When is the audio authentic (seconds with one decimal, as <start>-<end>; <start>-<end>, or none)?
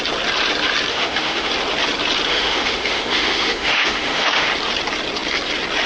0.0-0.9; 1.5-2.3; 4.5-5.9